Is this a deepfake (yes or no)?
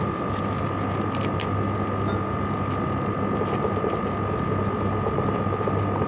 no